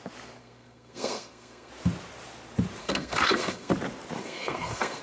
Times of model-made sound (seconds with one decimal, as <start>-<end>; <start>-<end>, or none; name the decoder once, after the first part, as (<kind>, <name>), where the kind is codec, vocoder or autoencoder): 0.4-1.7 (codec, SNAC); 2.8-3.7; 4.2-5.0